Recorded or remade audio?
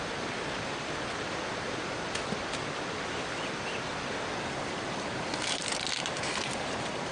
recorded